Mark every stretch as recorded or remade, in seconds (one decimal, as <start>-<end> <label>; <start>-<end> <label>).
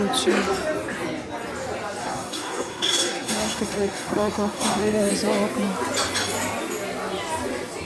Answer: 0.0-2.0 recorded; 2.0-5.1 remade; 5.1-7.9 recorded